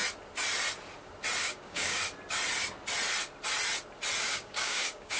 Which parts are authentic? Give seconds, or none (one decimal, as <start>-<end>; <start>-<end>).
0.0-1.4; 2.0-4.2